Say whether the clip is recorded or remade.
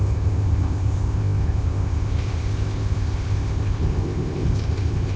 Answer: remade